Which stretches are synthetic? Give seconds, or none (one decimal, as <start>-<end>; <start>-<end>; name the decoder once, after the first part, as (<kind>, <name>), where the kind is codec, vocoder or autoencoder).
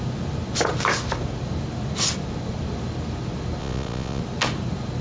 3.6-4.2 (vocoder, Vocos)